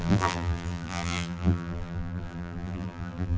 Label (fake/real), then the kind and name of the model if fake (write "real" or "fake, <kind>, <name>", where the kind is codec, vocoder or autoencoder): fake, vocoder, BigVGAN v2